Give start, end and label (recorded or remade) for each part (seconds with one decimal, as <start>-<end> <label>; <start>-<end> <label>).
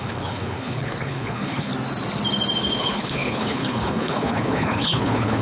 0.0-1.7 remade; 1.7-2.8 recorded; 2.8-5.4 remade